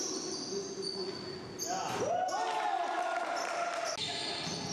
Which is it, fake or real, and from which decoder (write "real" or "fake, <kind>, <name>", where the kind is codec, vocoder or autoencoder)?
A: real